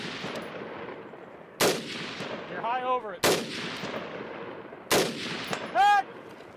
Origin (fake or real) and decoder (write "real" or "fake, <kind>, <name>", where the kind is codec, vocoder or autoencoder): real